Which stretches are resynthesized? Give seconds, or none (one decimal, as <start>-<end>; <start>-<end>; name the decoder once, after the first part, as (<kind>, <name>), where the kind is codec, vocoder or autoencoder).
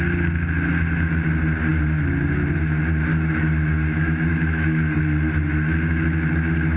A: 3.1-5.0 (autoencoder, DAC-VAE)